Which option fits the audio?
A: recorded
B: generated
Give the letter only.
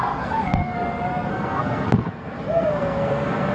B